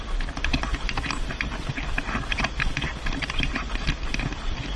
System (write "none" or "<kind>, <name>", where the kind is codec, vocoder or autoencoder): none